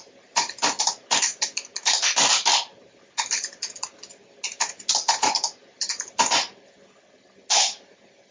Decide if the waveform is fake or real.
real